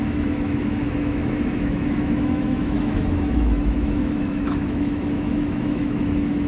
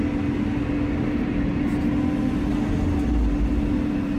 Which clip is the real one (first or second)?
second